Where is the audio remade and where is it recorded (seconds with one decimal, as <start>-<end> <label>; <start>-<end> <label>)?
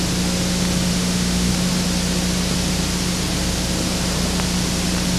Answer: 0.0-0.9 recorded; 0.9-1.5 remade; 1.5-5.2 recorded